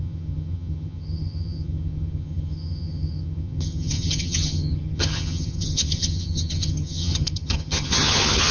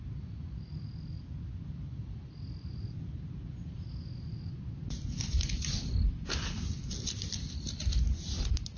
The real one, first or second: second